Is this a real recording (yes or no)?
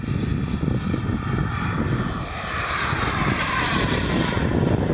yes